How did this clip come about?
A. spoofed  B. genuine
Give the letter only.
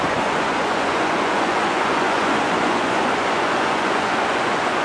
A